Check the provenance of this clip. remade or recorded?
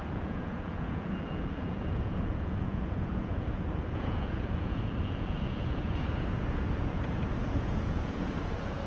remade